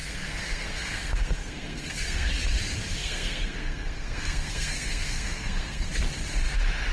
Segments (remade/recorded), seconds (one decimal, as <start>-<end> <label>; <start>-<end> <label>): 0.0-2.3 remade; 2.3-3.0 recorded; 3.0-5.9 remade; 5.9-6.9 recorded